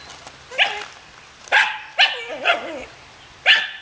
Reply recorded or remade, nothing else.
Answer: recorded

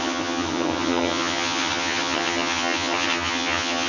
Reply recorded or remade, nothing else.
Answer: remade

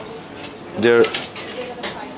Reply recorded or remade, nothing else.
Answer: recorded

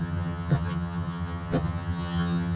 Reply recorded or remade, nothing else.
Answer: remade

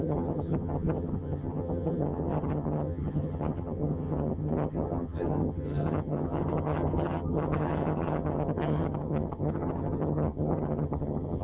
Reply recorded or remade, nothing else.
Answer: remade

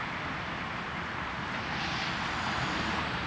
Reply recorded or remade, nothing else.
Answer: recorded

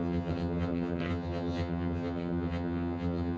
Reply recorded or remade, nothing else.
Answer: remade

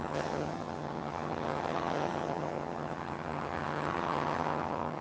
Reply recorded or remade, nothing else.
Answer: remade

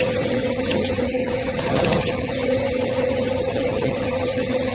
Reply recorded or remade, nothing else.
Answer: remade